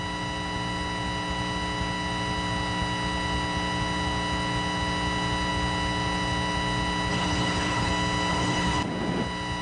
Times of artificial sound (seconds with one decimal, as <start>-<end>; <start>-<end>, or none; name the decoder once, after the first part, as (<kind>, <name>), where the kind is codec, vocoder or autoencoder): 7.1-7.9 (codec, HILCodec); 8.3-8.9